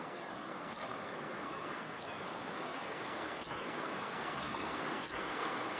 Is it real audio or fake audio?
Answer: fake